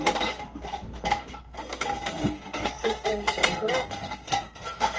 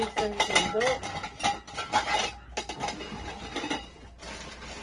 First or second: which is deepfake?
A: first